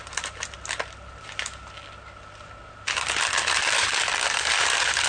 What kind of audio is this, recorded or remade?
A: recorded